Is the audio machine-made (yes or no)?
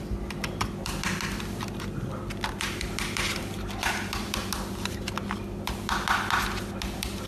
no